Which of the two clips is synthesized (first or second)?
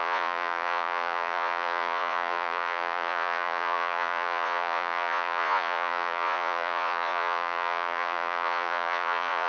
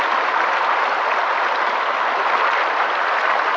first